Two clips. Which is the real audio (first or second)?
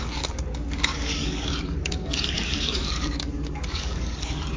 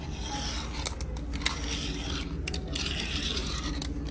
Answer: second